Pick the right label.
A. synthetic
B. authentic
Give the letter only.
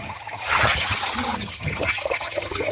A